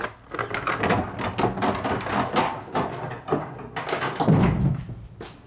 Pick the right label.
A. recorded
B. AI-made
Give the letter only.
A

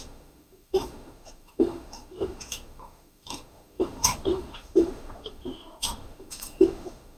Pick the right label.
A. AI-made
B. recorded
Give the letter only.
A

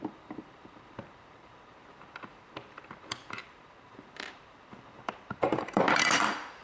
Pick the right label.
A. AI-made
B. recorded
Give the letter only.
A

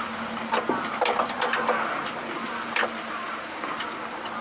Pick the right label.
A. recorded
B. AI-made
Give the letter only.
A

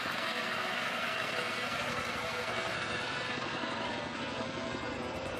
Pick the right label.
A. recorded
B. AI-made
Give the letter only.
B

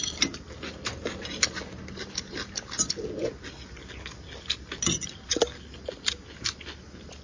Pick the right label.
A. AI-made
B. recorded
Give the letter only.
B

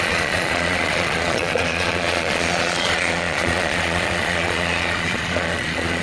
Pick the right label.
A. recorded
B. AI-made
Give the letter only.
B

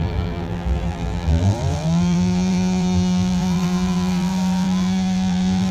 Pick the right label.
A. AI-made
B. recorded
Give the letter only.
A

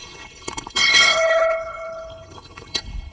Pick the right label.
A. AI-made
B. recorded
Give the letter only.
A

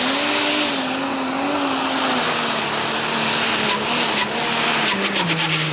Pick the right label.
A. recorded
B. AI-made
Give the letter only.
A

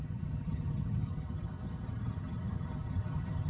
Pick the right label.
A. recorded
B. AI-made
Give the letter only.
B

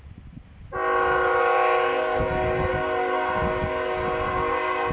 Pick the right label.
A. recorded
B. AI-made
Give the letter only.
A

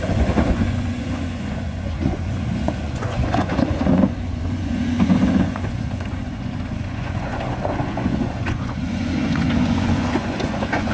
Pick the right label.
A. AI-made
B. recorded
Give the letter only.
A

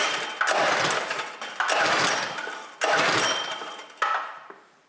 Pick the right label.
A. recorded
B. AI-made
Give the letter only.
A